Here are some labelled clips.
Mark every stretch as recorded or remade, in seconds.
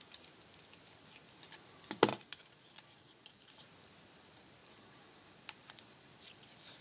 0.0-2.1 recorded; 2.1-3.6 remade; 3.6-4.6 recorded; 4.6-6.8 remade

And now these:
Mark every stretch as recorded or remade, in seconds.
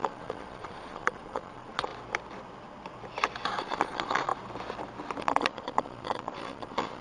0.0-1.9 remade; 1.9-3.6 recorded; 3.6-4.3 remade; 4.3-5.2 recorded; 5.2-7.0 remade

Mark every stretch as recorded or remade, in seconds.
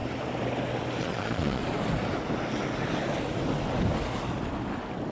0.0-1.0 recorded; 1.0-1.6 remade; 1.6-5.1 recorded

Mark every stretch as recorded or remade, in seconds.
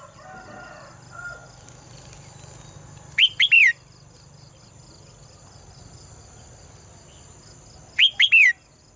0.0-9.0 recorded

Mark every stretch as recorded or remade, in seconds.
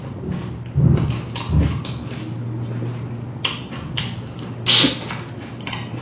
0.0-6.0 recorded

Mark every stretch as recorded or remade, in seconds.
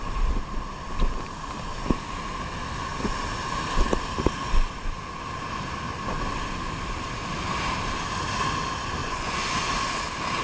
0.0-9.0 recorded; 9.0-9.6 remade; 9.6-10.4 recorded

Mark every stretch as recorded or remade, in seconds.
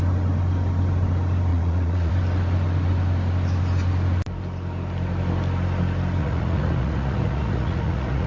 0.0-1.5 recorded; 1.5-2.1 remade; 2.1-6.2 recorded; 6.2-8.3 remade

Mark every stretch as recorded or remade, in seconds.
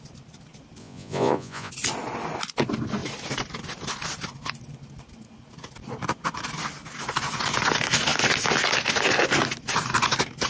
0.0-0.8 recorded; 0.8-1.7 remade; 1.7-10.5 recorded